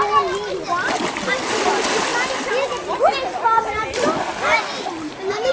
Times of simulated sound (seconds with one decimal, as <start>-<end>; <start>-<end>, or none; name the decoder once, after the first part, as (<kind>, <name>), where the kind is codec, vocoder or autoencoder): none